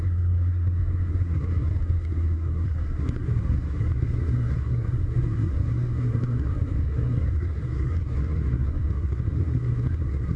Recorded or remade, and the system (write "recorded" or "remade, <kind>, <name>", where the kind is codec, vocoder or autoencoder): remade, codec, SNAC